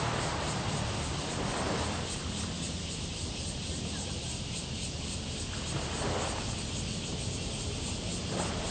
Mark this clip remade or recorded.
recorded